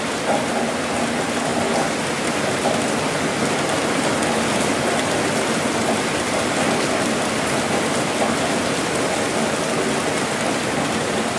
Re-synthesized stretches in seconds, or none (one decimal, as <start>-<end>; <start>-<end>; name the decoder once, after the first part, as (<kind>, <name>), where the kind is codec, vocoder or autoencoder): none